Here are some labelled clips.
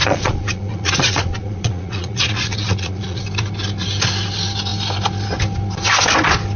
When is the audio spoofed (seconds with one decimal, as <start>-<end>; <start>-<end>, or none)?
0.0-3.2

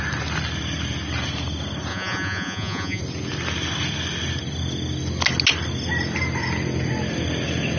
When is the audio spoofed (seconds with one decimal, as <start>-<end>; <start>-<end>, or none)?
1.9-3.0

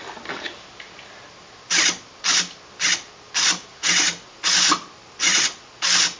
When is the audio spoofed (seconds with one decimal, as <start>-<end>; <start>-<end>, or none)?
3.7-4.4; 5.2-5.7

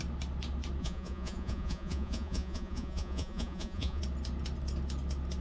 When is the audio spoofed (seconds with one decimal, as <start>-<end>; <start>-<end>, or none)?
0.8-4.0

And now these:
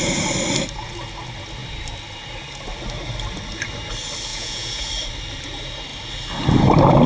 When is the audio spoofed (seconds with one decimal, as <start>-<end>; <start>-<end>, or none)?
4.3-4.9

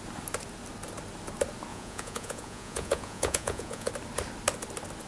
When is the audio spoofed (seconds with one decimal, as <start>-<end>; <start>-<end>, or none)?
1.7-3.9